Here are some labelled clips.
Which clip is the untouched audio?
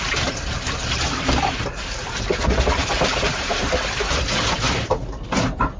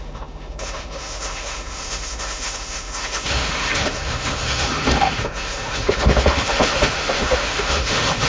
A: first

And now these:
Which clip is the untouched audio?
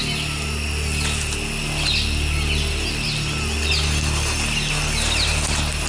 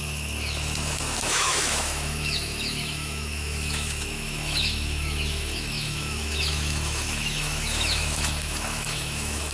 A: first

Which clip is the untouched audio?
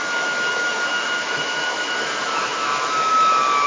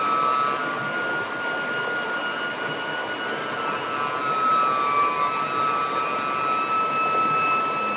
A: second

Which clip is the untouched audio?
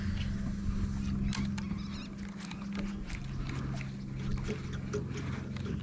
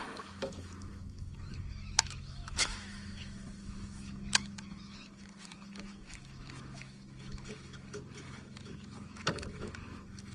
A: first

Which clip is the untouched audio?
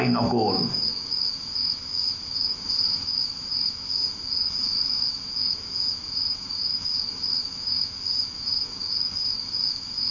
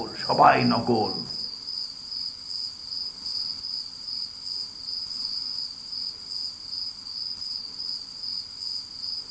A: second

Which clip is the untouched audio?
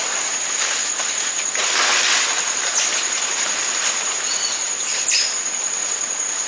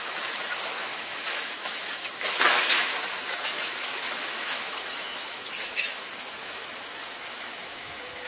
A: first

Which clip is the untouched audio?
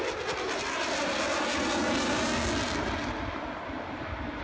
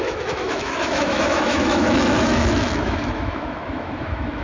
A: first